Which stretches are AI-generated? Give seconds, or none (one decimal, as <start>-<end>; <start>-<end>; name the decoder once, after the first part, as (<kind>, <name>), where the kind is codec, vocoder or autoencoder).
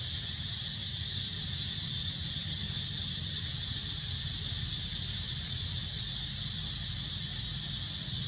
none